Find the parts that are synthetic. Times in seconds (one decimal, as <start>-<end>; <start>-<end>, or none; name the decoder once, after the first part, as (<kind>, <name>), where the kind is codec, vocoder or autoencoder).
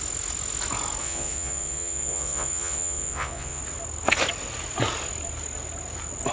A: 1.0-3.6 (vocoder, Vocos)